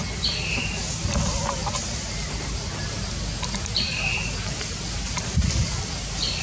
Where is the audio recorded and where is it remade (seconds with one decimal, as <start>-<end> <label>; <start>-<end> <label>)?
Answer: 0.0-6.4 recorded